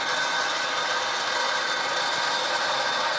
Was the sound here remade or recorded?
recorded